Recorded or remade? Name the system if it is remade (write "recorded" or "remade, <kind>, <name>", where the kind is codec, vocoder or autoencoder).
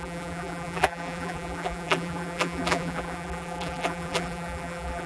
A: remade, vocoder, BigVGAN v2